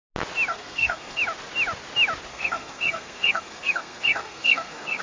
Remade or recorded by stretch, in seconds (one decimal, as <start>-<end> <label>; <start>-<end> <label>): 0.0-0.5 recorded; 0.5-1.2 remade; 1.2-2.3 recorded; 2.3-5.0 remade

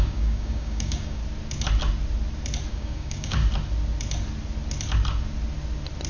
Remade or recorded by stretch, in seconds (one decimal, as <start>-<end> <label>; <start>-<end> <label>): 0.0-1.2 remade; 1.2-2.7 recorded; 2.7-3.4 remade; 3.4-6.1 recorded

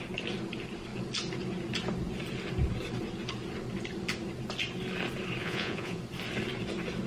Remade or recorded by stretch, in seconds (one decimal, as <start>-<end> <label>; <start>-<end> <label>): 0.0-5.4 recorded; 5.4-6.0 remade; 6.0-7.1 recorded

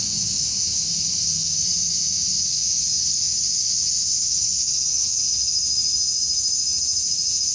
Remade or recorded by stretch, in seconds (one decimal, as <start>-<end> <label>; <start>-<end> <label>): 0.0-7.5 remade